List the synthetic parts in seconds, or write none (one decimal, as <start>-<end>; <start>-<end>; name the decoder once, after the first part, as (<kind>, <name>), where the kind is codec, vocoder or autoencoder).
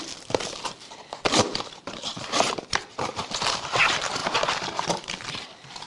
0.0-3.2 (vocoder, BigVGAN v2); 3.8-5.9